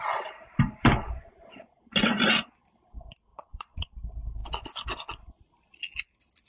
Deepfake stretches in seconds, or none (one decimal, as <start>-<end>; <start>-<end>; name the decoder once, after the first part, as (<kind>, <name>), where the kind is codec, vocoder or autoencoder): 3.3-3.9 (vocoder, Vocos)